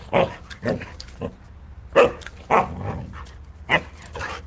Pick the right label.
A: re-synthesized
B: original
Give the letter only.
B